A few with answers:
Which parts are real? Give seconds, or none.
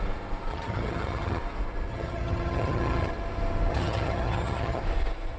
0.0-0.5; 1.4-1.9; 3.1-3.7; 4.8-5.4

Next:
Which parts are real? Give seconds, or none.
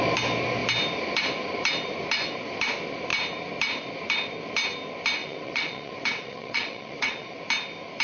0.0-5.2; 7.4-8.0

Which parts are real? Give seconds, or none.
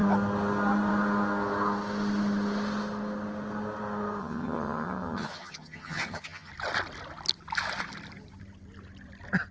0.0-4.2; 6.5-9.5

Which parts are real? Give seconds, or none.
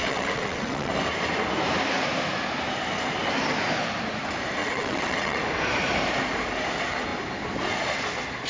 0.9-4.6; 5.4-8.5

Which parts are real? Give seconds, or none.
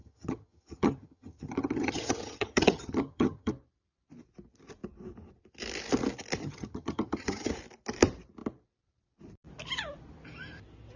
3.5-6.4; 7.5-11.0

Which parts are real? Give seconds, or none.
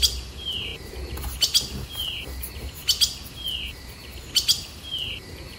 0.0-5.6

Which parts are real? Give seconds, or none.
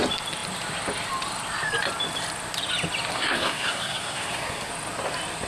0.0-3.1; 4.7-5.5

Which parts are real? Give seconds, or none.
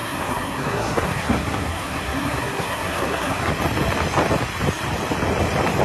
3.5-5.8